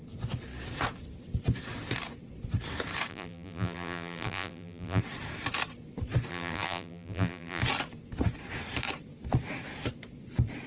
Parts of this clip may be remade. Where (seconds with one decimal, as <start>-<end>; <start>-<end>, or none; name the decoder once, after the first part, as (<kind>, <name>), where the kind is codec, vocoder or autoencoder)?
3.1-5.0 (vocoder, BigVGAN v2); 6.3-7.6